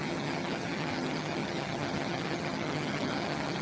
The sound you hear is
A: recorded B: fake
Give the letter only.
B